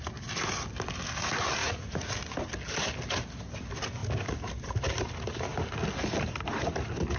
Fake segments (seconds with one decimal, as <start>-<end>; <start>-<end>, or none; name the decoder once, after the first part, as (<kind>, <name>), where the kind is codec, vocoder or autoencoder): 1.6-2.1 (vocoder, Vocos)